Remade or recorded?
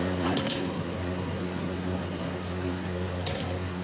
remade